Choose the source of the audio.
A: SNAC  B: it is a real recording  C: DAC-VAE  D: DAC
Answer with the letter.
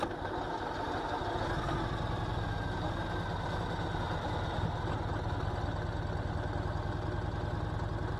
B